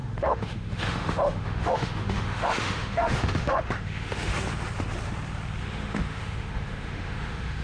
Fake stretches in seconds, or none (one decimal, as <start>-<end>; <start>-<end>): 0.0-4.3; 5.6-7.6